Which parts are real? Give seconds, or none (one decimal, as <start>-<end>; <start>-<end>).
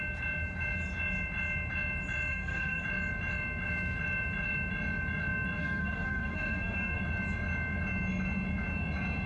0.0-2.3; 2.8-5.6; 7.0-9.3